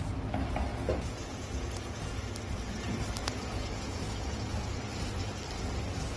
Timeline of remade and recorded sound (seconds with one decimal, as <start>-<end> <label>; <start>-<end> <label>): 0.0-0.7 recorded; 0.7-2.2 remade; 2.2-3.2 recorded; 3.2-4.8 remade; 4.8-6.2 recorded